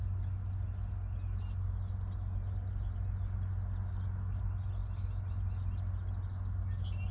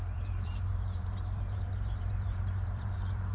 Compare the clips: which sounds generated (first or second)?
second